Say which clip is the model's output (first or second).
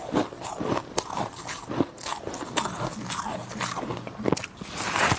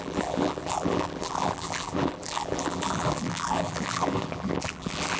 second